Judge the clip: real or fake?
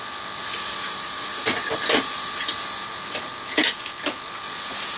real